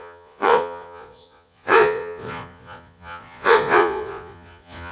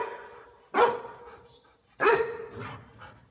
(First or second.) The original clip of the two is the second